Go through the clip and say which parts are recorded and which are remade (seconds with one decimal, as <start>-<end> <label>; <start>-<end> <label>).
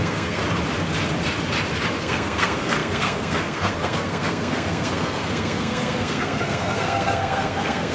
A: 0.0-0.4 remade; 0.4-2.0 recorded; 2.0-7.9 remade